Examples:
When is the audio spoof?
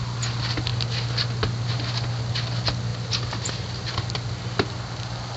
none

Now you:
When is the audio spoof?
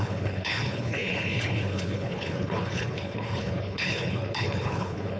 0.0-5.2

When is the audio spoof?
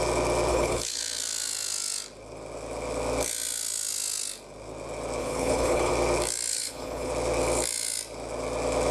0.5-1.0; 5.2-5.9; 6.5-7.1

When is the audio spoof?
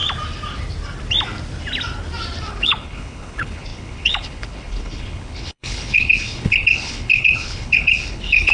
2.5-8.5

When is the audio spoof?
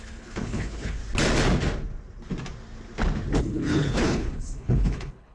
0.0-1.0; 3.4-5.3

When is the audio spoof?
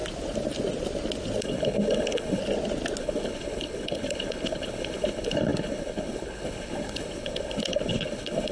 1.4-2.4; 3.0-8.5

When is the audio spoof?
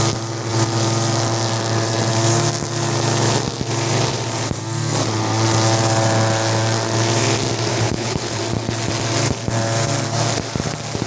7.7-8.4